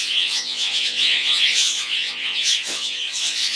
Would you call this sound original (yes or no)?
no